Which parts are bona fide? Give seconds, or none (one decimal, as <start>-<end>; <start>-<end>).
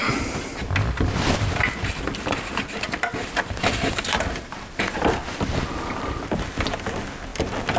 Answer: 0.0-7.8